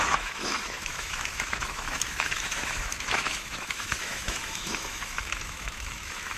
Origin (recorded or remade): remade